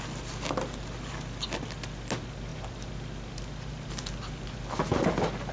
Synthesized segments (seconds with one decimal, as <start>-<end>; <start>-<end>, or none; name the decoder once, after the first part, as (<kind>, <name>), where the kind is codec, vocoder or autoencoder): none